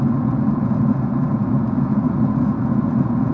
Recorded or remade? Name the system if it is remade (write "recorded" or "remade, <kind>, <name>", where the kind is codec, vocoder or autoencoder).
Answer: remade, vocoder, Vocos